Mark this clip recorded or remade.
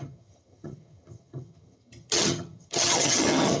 remade